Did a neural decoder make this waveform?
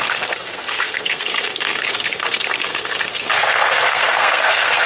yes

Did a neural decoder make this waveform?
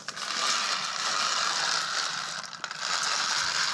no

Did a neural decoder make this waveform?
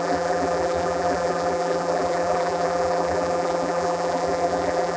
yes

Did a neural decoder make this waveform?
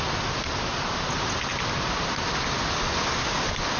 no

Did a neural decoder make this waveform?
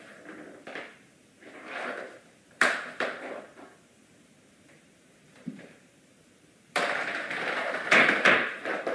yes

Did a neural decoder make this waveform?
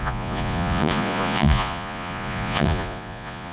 yes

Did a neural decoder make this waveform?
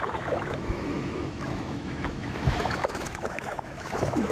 yes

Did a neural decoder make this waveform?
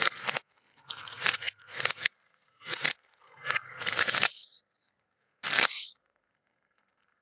yes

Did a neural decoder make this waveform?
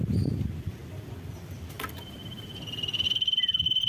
no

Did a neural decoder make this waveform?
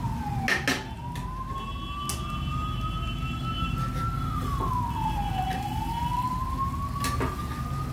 no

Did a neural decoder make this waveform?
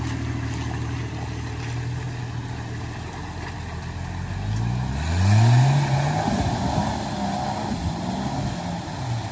no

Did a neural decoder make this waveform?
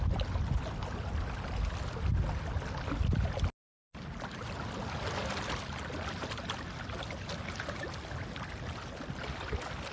no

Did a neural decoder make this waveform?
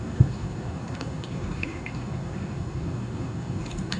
yes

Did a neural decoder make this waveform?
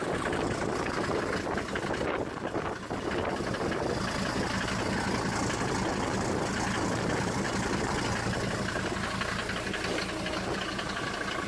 no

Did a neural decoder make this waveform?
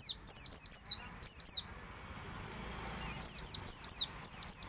no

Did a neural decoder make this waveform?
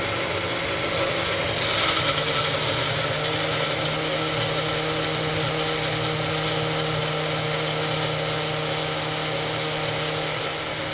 no